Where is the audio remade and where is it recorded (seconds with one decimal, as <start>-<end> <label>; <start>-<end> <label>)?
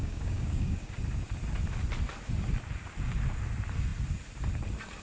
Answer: 0.0-0.9 remade; 0.9-5.0 recorded